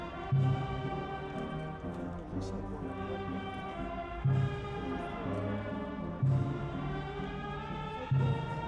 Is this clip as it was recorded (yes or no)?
yes